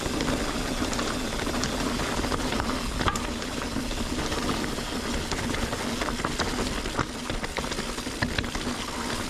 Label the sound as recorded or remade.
recorded